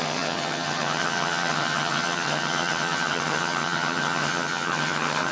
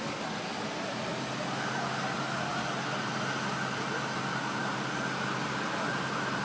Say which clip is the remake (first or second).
first